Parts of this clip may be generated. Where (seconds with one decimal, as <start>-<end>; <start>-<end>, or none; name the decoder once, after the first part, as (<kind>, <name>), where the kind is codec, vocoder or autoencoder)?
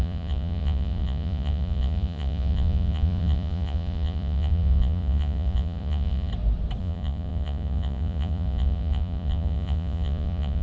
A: 0.0-6.3 (vocoder, Vocos); 6.8-10.6